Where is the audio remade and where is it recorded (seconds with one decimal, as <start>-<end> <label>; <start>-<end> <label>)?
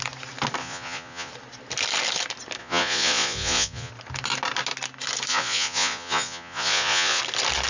0.0-0.6 recorded; 0.6-1.3 remade; 1.3-2.6 recorded; 2.6-3.9 remade; 3.9-5.3 recorded; 5.3-7.2 remade; 7.2-7.7 recorded